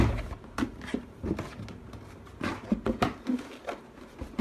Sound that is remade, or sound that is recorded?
recorded